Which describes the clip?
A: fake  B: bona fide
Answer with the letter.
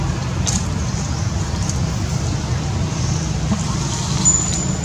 B